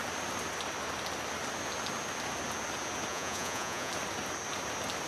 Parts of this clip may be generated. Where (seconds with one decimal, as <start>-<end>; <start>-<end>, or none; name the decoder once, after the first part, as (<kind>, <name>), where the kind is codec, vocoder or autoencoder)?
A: 3.1-3.9 (vocoder, Vocos)